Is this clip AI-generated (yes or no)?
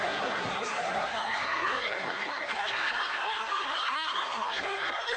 yes